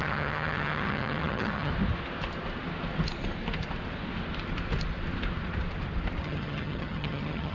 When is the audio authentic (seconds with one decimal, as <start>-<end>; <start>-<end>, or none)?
1.7-6.2